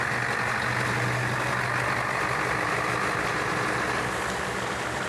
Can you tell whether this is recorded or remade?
recorded